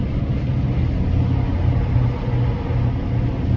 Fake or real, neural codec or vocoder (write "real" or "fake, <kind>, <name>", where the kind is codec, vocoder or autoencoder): real